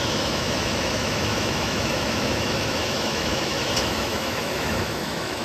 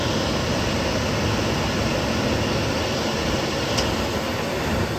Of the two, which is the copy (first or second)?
first